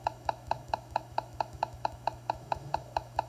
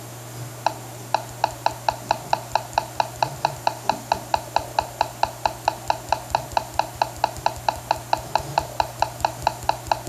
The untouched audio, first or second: second